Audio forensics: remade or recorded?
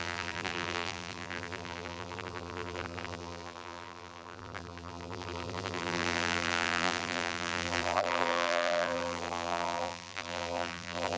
remade